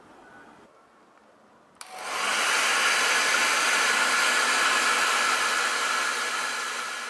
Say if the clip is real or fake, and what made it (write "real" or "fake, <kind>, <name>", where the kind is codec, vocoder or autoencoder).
real